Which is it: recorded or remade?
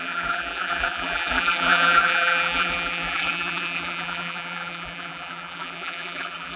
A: remade